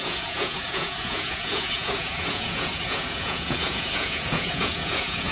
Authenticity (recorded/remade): remade